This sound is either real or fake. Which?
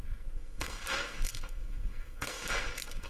fake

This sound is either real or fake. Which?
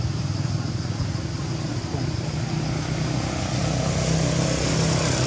real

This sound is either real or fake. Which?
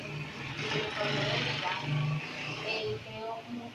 real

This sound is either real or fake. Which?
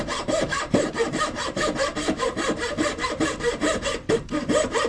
fake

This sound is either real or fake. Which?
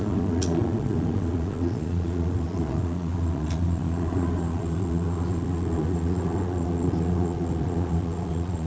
fake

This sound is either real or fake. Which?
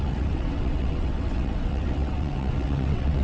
fake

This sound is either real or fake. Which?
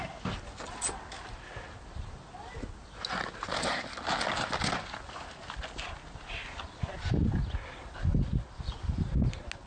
real